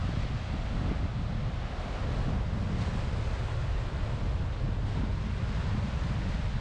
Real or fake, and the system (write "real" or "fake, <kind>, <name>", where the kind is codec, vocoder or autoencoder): real